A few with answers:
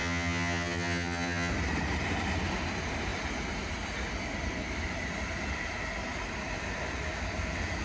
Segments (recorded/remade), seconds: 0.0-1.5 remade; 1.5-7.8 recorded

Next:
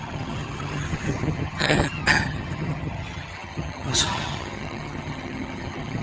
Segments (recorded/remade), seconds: 0.0-6.0 remade

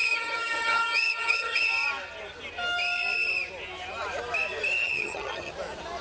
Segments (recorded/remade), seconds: 0.0-1.7 remade; 1.7-4.8 recorded; 4.8-5.5 remade; 5.5-6.0 recorded

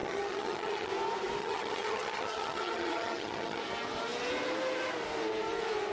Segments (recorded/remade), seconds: 0.0-0.9 remade; 0.9-1.4 recorded; 1.4-3.6 remade; 3.6-5.9 recorded